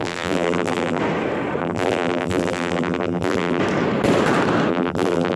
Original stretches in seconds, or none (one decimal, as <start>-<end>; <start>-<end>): 1.0-1.6; 3.6-4.7